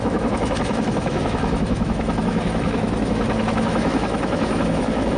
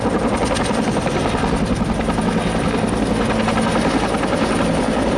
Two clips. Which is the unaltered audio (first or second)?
second